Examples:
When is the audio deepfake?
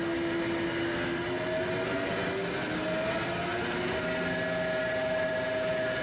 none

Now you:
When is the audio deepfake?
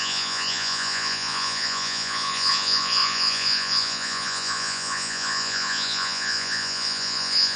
0.0-7.6 (vocoder, Vocos)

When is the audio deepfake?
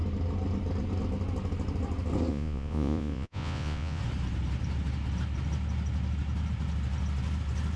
2.3-4.0 (vocoder, Vocos)